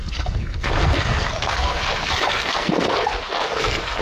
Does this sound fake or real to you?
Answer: fake